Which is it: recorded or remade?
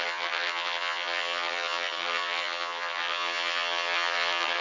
remade